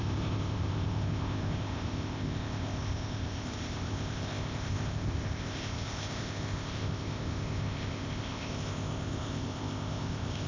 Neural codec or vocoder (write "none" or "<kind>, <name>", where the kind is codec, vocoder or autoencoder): codec, ZipCodec